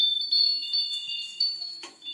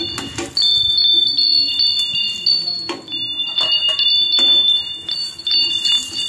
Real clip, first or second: second